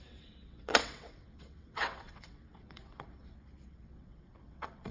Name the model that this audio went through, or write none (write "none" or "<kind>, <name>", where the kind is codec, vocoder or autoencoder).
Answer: vocoder, WaveNeXt